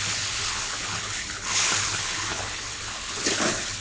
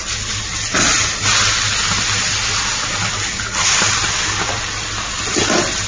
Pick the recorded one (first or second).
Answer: second